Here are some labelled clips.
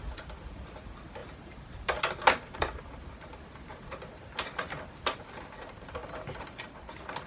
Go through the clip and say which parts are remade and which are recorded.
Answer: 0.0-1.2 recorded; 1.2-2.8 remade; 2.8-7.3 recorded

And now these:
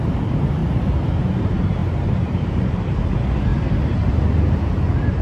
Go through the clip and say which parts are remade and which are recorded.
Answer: 0.0-0.6 remade; 0.6-1.4 recorded; 1.4-5.2 remade

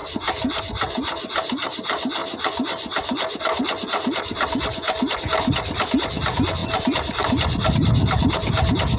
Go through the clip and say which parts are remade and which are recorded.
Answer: 0.0-0.6 remade; 0.6-6.6 recorded; 6.6-9.0 remade